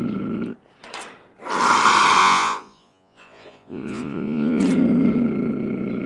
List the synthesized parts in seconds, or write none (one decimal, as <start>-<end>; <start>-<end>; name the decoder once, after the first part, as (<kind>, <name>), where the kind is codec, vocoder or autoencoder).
2.2-4.6 (vocoder, Vocos)

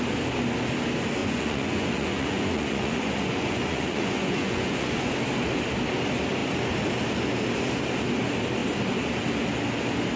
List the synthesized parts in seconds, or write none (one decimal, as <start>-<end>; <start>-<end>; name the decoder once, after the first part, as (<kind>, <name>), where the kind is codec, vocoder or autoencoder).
1.2-5.1 (vocoder, Vocos)